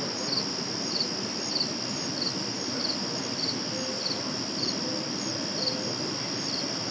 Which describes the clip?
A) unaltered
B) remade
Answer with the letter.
A